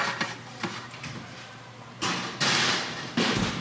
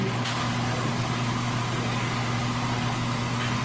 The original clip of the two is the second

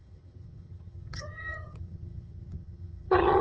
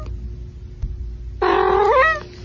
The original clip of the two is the second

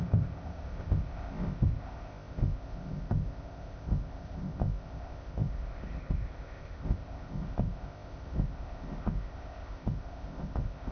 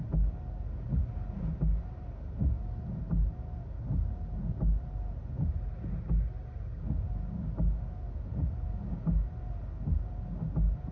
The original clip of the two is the second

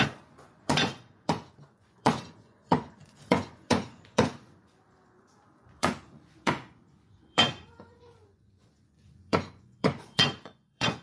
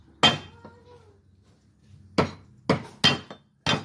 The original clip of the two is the second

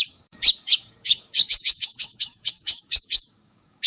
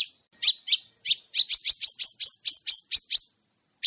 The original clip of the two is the second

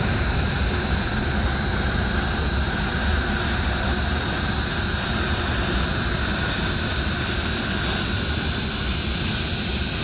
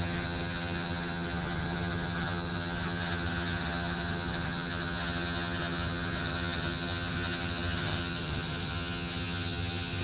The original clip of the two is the first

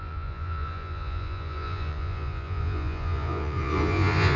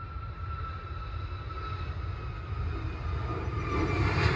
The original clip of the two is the second